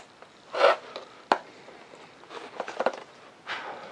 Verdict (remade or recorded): recorded